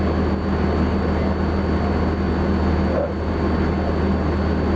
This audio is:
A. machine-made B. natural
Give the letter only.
B